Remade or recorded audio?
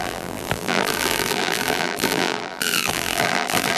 remade